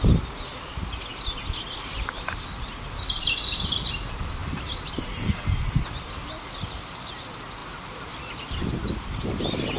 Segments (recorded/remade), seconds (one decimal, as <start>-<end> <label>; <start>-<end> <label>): 0.0-9.8 recorded